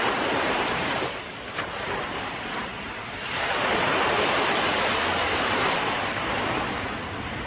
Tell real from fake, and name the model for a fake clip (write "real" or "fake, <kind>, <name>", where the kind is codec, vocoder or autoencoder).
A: fake, vocoder, BigVGAN v2